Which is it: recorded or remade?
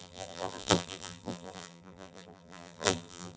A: remade